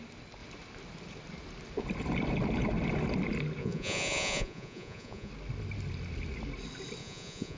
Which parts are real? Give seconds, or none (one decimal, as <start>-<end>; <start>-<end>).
0.0-3.6; 5.3-7.0